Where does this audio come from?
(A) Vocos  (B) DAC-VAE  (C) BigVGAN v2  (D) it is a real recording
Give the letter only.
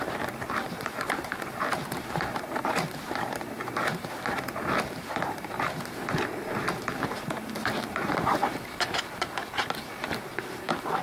C